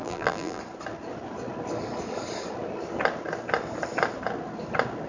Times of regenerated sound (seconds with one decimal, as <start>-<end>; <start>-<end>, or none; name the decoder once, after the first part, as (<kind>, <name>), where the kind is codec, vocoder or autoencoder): 0.0-0.6 (vocoder, BigVGAN v2)